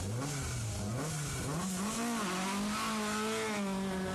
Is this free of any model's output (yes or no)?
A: yes